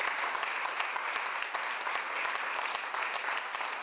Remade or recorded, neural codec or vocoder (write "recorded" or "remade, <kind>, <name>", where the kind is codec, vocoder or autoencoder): recorded